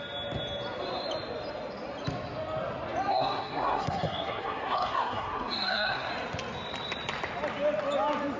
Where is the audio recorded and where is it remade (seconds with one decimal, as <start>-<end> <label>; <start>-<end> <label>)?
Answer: 0.0-3.1 recorded; 3.1-6.1 remade; 6.1-8.4 recorded